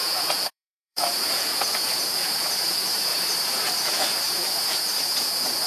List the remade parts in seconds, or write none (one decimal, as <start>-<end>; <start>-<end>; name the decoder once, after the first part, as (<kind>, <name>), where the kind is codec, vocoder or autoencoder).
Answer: 0.0-5.7 (vocoder, Vocos)